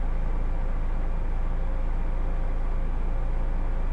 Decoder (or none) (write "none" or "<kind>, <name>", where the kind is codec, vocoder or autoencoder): none